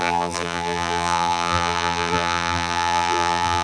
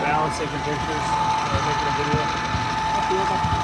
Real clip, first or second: second